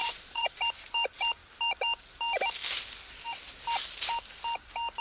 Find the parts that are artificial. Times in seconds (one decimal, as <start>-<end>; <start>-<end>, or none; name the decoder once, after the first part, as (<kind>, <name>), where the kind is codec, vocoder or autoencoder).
0.0-0.5 (vocoder, Vocos)